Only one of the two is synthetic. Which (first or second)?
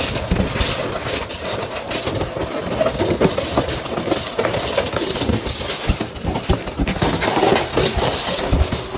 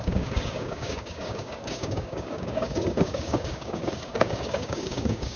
second